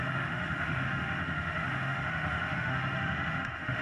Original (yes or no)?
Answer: no